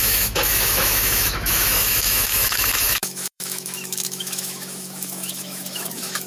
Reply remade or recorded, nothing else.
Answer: remade